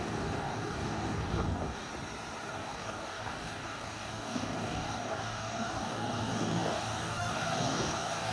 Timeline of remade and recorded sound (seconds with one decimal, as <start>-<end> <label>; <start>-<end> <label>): 0.0-1.9 remade; 1.9-2.5 recorded; 2.5-8.3 remade